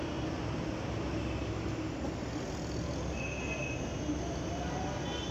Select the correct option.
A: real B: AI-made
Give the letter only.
A